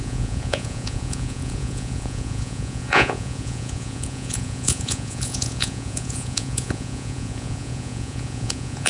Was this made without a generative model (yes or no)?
no